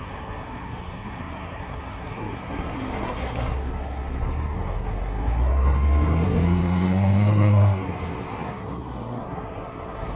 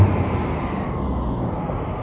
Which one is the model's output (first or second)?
first